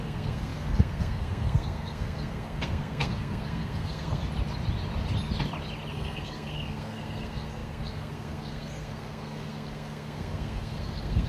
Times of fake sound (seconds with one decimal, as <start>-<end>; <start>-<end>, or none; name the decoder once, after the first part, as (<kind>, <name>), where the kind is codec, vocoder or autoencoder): 0.0-4.2 (codec, SNAC); 5.9-11.3